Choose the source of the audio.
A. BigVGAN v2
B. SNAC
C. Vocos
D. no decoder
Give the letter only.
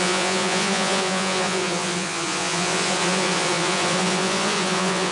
C